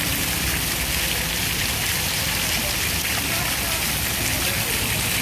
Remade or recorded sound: recorded